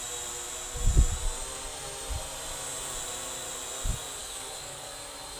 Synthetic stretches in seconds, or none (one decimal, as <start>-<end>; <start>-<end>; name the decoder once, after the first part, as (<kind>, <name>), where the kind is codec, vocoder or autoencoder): 4.2-4.9 (codec, DAC)